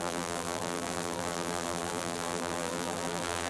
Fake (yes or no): yes